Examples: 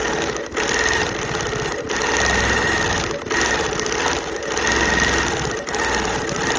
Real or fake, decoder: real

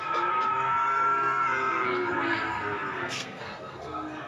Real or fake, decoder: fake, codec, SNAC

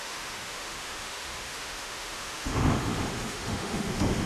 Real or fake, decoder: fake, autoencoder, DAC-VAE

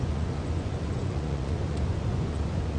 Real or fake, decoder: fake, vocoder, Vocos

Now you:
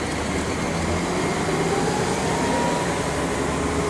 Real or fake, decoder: real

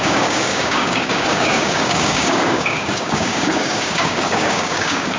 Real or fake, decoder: fake, codec, DAC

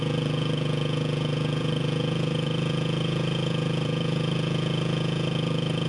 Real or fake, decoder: fake, vocoder, Vocos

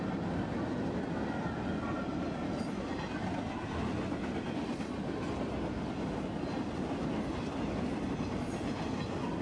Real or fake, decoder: real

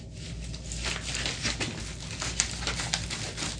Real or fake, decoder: real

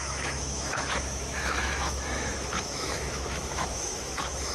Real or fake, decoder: fake, autoencoder, DAC-VAE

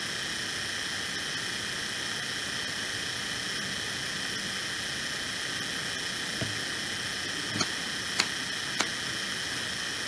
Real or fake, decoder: real